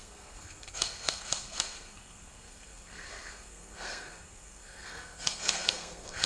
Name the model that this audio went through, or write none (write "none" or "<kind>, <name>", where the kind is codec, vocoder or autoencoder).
codec, SNAC